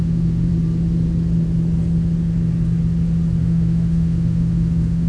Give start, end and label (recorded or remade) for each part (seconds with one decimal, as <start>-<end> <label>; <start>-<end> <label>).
0.0-0.5 remade; 0.5-3.4 recorded; 3.4-5.1 remade